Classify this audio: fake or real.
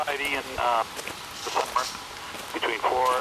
real